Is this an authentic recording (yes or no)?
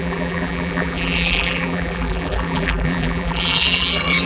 no